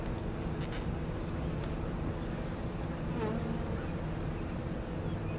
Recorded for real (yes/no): yes